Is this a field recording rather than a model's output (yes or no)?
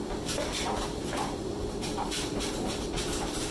no